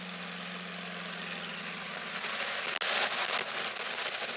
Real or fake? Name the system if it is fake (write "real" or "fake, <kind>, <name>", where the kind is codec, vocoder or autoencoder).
real